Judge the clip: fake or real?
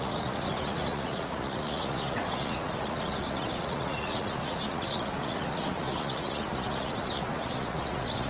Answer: fake